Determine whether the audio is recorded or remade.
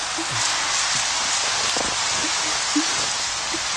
remade